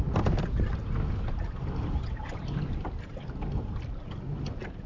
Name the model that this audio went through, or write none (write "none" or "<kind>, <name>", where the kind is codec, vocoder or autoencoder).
none